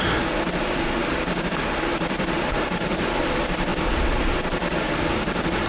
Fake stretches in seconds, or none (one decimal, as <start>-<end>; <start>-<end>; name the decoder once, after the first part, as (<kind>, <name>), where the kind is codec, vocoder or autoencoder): 1.9-3.1 (vocoder, BigVGAN v2); 3.7-4.9